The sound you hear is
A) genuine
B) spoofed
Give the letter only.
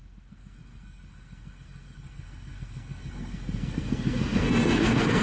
B